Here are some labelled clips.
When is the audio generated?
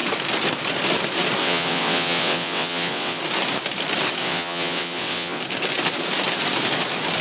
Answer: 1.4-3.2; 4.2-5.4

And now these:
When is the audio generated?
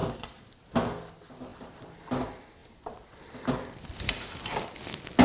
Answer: 1.5-2.1; 2.6-3.5